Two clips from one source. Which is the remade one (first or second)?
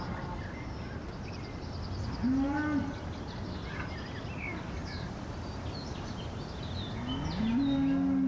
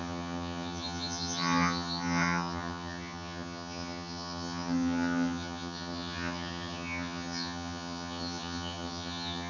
second